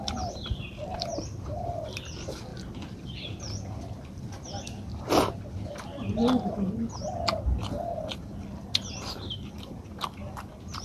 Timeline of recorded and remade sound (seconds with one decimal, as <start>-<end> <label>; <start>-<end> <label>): 0.0-2.5 remade; 2.5-7.6 recorded; 7.6-10.8 remade